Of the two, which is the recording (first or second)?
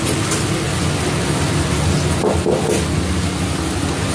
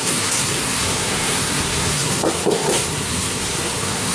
first